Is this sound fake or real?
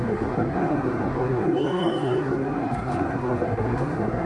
fake